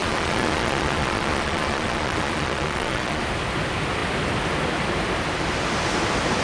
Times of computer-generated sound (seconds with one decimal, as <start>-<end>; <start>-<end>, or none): 0.0-3.2

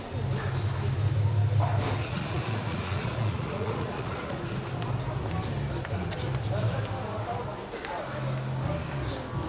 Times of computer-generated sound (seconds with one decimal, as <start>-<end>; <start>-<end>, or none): 2.0-4.4

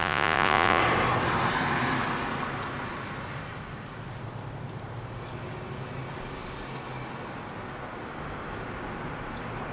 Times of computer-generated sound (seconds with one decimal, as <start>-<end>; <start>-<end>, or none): 0.0-0.8

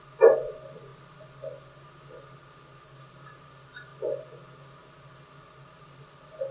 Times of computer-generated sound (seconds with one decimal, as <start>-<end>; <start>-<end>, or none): none

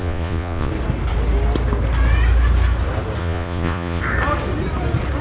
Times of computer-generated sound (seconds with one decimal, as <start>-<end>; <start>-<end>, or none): 0.0-0.7; 3.2-4.0

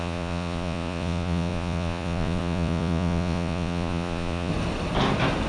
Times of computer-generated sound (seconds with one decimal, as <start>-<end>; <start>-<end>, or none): 0.0-4.5